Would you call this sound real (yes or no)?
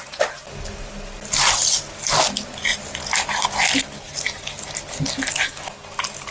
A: yes